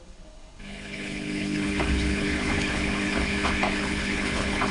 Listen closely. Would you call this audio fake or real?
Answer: fake